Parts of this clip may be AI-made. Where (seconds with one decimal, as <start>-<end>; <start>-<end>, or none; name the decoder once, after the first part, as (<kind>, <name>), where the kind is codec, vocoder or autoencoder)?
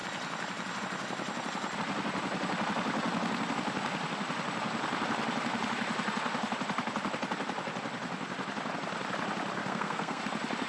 9.6-10.2 (codec, SNAC)